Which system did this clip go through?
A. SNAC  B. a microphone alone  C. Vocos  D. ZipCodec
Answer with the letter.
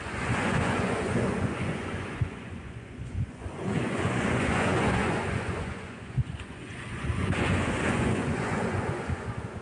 C